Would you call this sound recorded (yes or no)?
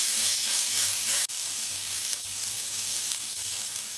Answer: no